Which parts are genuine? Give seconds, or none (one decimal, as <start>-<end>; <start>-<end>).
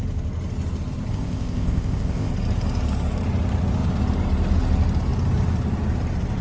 0.0-1.1; 2.3-6.4